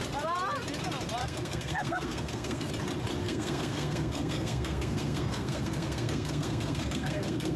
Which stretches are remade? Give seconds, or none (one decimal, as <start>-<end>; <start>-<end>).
1.2-2.7; 3.2-7.6